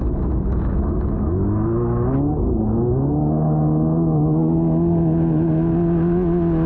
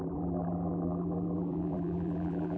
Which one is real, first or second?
first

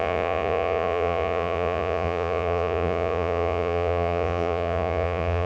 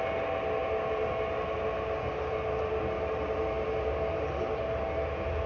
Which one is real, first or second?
second